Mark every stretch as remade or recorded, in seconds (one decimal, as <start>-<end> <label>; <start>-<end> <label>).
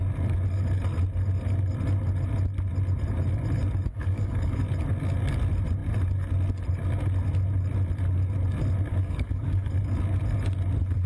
0.0-3.9 recorded; 3.9-4.6 remade; 4.6-8.9 recorded; 8.9-9.7 remade; 9.7-11.1 recorded